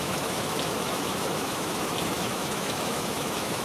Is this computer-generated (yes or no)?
yes